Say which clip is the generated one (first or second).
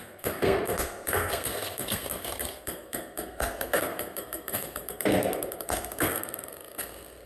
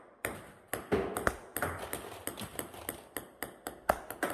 first